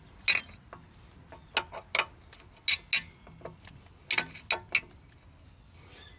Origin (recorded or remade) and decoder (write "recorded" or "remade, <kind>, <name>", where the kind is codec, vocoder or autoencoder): recorded